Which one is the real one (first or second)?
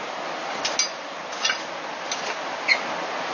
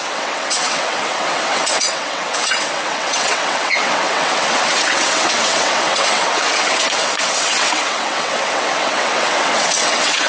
first